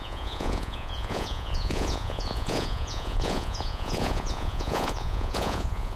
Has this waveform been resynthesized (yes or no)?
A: yes